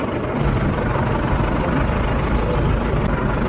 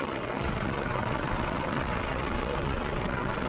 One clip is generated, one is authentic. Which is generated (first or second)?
second